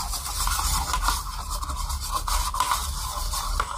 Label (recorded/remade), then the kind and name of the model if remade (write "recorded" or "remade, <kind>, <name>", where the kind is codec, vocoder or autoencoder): recorded